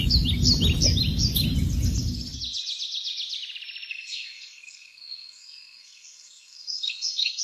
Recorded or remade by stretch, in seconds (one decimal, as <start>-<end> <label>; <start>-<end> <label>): 0.0-3.9 recorded; 3.9-7.4 remade